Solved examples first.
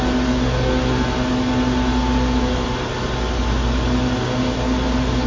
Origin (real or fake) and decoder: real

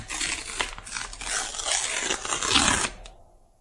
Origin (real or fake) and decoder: real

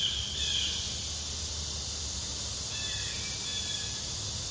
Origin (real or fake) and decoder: real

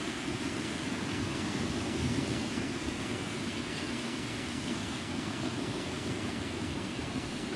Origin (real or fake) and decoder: fake, codec, SNAC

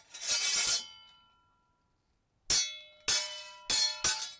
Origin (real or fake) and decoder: real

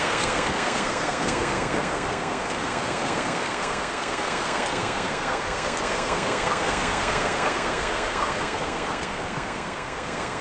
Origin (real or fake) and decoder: fake, codec, SNAC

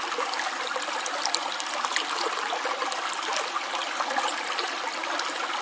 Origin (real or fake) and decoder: real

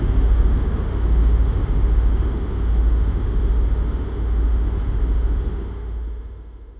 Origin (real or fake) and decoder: fake, autoencoder, DAC-VAE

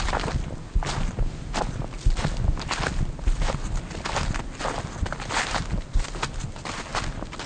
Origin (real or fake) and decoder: real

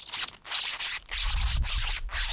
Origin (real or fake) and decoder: real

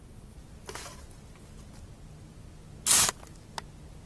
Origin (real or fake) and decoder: real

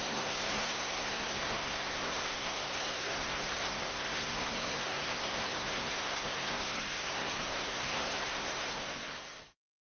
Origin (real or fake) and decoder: fake, codec, SNAC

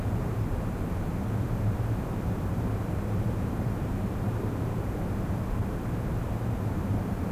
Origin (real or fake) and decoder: fake, vocoder, BigVGAN v2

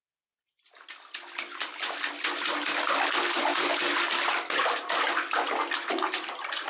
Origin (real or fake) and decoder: real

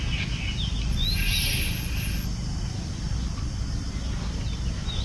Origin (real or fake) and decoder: real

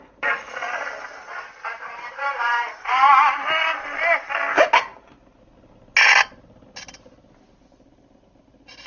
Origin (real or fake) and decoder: real